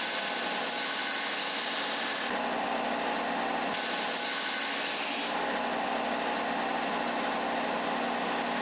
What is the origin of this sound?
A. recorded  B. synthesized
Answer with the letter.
A